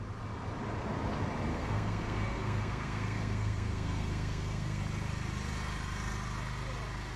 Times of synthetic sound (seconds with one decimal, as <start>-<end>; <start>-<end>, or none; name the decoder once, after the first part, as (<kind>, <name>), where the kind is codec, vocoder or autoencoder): 1.5-4.8 (codec, SNAC)